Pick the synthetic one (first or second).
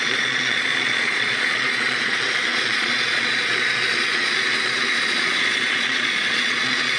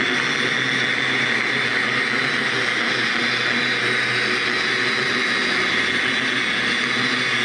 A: first